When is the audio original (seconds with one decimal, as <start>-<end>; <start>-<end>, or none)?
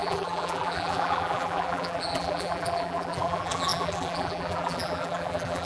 none